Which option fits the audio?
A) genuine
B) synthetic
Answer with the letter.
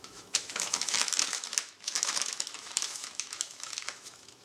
B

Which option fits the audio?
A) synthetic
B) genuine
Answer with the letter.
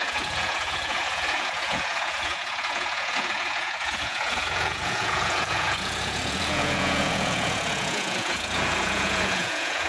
A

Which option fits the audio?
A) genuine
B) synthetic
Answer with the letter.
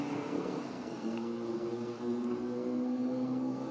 B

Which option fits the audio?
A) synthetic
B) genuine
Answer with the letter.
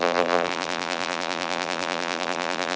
A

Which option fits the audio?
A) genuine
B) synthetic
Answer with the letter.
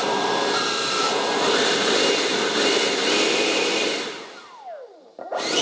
A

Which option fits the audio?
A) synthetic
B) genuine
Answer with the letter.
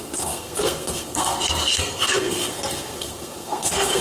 A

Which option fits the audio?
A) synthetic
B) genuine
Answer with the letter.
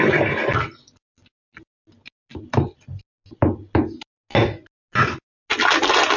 B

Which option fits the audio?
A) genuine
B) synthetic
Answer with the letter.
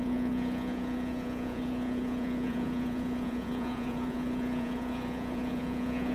B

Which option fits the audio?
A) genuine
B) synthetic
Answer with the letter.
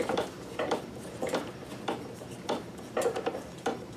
B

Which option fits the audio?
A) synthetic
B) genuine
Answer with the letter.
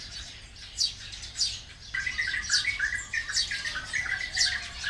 B